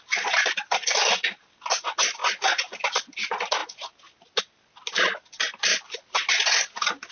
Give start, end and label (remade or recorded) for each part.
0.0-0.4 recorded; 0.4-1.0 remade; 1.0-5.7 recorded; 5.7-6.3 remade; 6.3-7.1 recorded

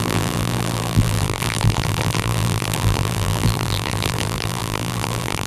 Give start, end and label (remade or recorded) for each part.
0.0-5.5 remade

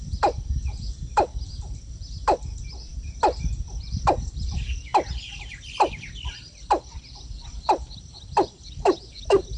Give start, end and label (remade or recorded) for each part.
0.0-4.9 remade; 4.9-6.4 recorded; 6.4-9.6 remade

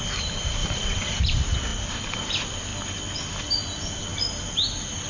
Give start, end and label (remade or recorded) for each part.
0.0-0.6 remade; 0.6-1.2 recorded; 1.2-2.7 remade; 2.7-3.5 recorded; 3.5-4.1 remade; 4.1-5.1 recorded